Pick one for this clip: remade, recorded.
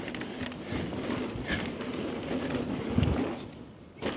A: recorded